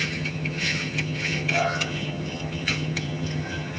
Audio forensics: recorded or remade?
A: remade